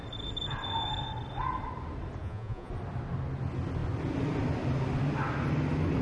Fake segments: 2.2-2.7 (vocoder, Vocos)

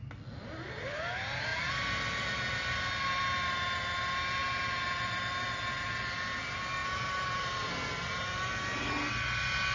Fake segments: none

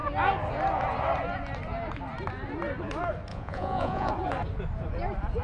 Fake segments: 3.3-4.1 (vocoder, Vocos)

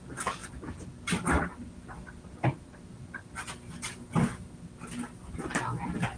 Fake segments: none

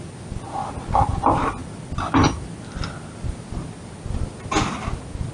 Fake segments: none

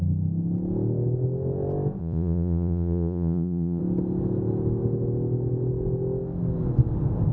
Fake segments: 2.0-3.8 (vocoder, Vocos)

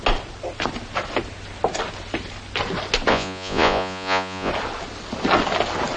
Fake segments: 3.1-4.5 (vocoder, Vocos)